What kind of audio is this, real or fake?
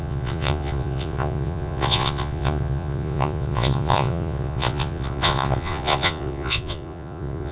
fake